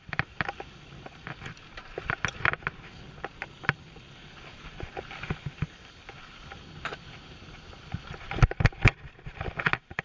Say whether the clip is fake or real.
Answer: real